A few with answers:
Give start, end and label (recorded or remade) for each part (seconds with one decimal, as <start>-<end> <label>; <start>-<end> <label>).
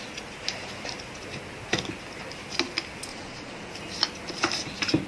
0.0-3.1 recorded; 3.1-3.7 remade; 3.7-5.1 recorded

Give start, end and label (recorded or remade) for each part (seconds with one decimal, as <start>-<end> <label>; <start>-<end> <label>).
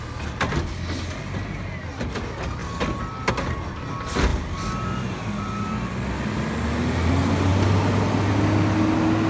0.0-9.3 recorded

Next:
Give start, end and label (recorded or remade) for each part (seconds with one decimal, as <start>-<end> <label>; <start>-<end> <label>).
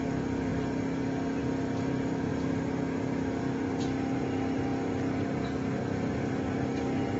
0.0-7.2 recorded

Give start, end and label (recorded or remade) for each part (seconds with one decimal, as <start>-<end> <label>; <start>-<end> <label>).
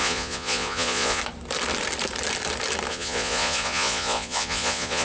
0.0-1.2 remade; 1.2-2.9 recorded; 2.9-5.0 remade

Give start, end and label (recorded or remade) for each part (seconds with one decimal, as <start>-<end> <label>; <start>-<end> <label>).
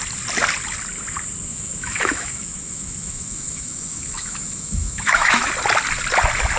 0.0-1.5 recorded; 1.5-5.5 remade; 5.5-6.6 recorded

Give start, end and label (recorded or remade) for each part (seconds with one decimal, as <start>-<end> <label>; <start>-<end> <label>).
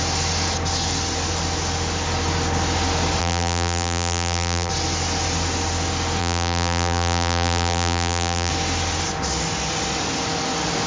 0.0-3.2 recorded; 3.2-4.7 remade; 4.7-6.2 recorded; 6.2-8.5 remade; 8.5-10.9 recorded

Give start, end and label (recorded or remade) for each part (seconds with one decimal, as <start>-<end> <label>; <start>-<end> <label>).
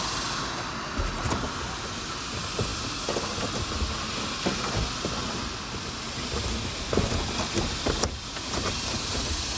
0.0-9.6 recorded